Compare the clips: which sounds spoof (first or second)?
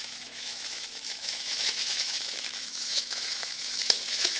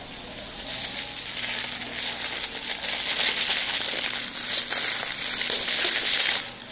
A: first